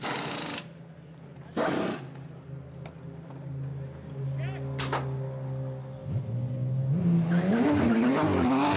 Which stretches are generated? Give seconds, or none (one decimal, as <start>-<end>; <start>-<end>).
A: none